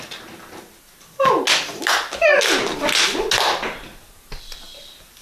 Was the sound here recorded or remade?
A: recorded